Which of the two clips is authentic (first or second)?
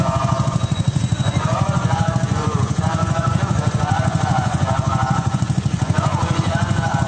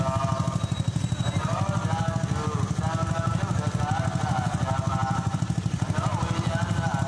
second